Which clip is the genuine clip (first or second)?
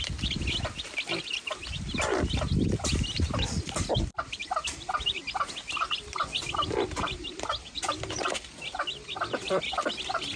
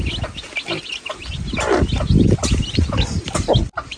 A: second